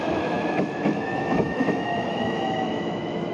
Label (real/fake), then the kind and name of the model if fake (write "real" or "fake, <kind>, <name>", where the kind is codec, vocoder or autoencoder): fake, autoencoder, DAC-VAE